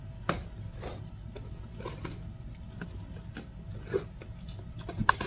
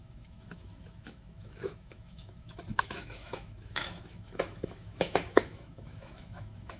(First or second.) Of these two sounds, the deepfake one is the second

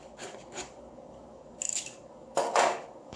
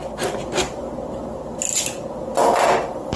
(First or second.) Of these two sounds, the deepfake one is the first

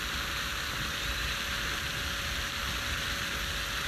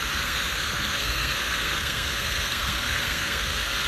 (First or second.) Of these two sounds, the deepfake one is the second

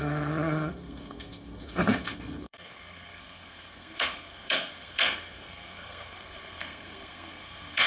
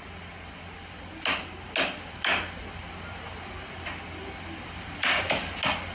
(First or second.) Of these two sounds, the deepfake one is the first